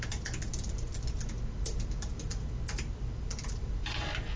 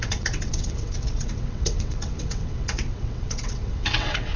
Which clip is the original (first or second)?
first